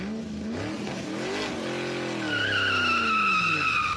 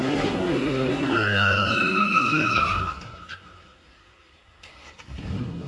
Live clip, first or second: first